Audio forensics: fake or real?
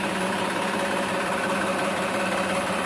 real